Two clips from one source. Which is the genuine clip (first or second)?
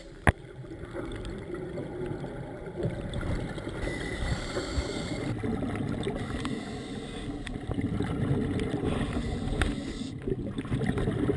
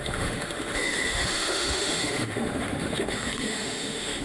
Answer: first